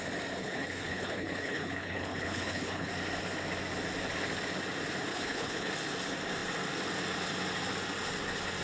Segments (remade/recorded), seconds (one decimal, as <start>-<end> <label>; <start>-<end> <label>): 0.0-0.4 recorded; 0.4-2.9 remade; 2.9-5.1 recorded; 5.1-5.7 remade; 5.7-8.6 recorded